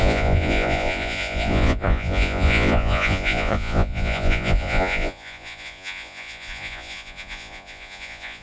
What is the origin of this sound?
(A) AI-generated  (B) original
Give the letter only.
A